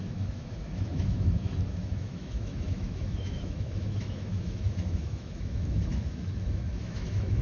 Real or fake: fake